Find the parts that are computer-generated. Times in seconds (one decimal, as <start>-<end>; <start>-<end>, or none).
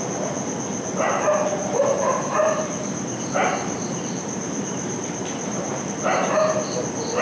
1.6-5.9